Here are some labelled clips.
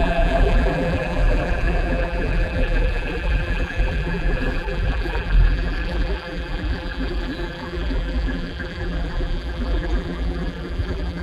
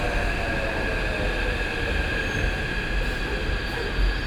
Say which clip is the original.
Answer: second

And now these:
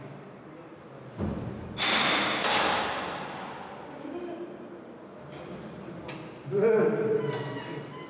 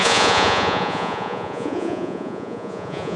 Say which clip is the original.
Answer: first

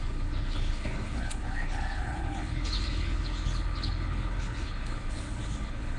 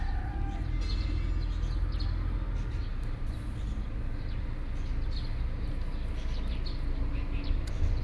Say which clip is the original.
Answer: second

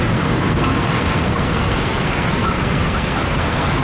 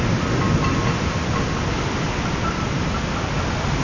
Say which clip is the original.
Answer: second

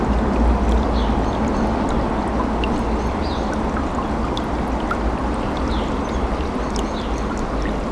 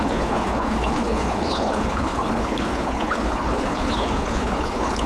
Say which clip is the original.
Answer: first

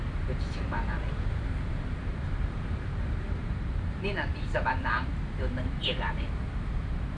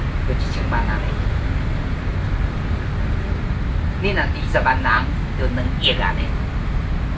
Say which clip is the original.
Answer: second